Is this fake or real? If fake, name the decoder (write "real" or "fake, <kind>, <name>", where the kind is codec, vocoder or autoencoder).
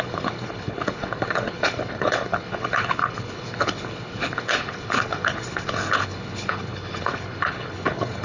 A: fake, codec, HILCodec